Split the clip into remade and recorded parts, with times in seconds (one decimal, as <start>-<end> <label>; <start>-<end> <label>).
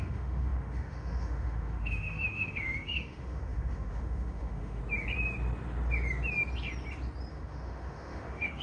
0.0-4.8 remade; 4.8-7.3 recorded; 7.3-8.6 remade